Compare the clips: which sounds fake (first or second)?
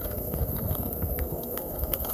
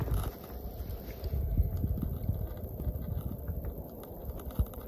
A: first